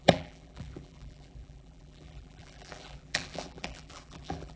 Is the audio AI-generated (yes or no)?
yes